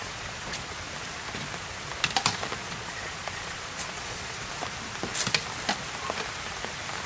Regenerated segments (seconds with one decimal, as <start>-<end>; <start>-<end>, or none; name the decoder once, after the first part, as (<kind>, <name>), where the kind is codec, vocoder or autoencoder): 0.0-0.7 (vocoder, Vocos); 2.6-4.5